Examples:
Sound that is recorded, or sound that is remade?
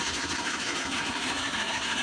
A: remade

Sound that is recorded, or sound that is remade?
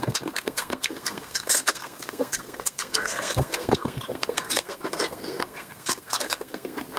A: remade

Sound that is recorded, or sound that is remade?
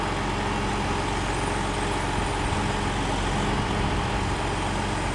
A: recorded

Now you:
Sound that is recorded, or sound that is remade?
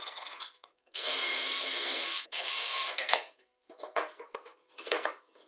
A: remade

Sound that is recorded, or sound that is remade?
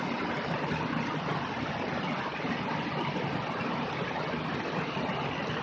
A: recorded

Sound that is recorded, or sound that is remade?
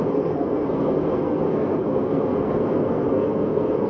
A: remade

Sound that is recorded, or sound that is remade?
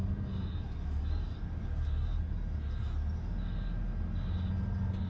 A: recorded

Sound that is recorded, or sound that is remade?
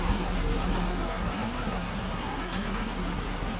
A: remade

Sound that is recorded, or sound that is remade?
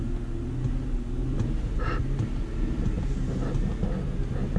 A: recorded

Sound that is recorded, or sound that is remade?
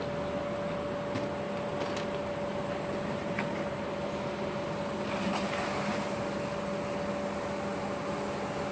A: recorded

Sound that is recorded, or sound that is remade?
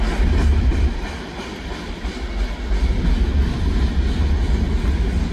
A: recorded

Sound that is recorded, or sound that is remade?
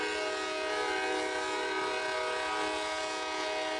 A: recorded